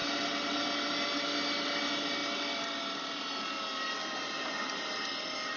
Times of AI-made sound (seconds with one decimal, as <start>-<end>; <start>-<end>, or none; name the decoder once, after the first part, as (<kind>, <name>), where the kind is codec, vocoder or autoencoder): none